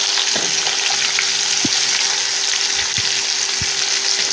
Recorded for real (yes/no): yes